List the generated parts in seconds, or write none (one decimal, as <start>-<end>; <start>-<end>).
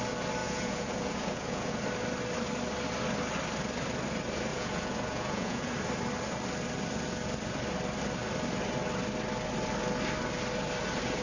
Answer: 0.4-1.8; 4.5-5.7